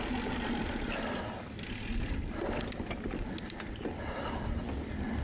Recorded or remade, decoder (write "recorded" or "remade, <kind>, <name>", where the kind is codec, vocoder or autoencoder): recorded